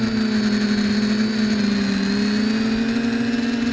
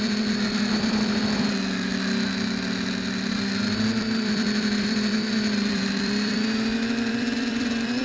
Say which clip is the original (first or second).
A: first